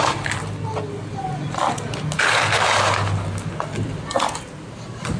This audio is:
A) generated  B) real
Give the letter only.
B